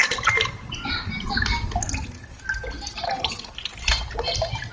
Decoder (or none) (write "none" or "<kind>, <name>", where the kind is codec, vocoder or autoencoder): none